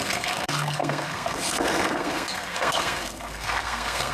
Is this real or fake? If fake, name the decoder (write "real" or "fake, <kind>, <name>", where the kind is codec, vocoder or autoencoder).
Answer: fake, codec, SNAC